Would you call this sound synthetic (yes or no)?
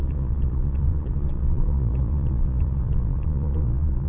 yes